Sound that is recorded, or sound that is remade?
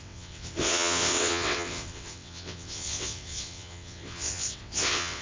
remade